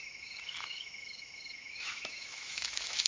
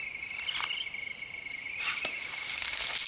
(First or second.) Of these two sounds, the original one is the second